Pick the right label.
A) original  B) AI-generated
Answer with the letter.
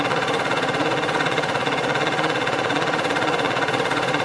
B